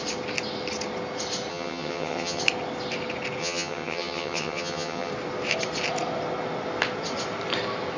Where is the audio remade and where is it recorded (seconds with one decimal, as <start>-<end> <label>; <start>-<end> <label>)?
0.0-1.5 recorded; 1.5-2.4 remade; 2.4-3.4 recorded; 3.4-5.1 remade; 5.1-8.0 recorded